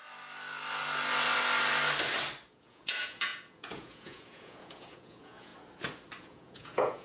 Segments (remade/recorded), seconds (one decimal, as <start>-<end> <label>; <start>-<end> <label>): 0.0-2.5 recorded; 2.5-5.5 remade; 5.5-6.2 recorded; 6.2-7.0 remade